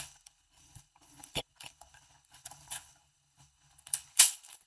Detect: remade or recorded remade